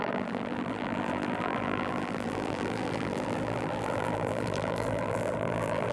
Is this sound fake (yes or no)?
yes